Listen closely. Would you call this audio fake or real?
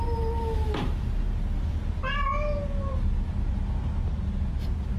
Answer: real